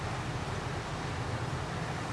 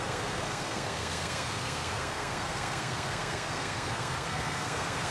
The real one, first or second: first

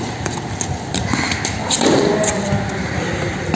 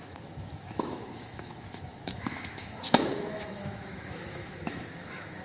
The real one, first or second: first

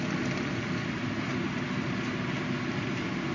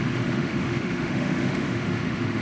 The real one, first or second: first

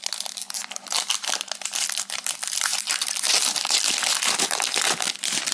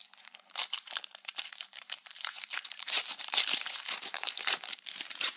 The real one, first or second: first